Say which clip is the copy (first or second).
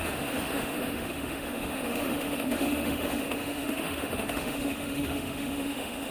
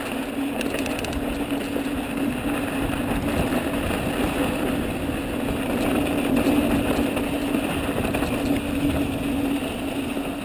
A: first